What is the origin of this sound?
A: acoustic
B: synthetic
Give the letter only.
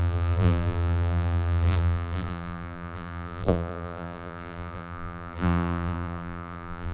B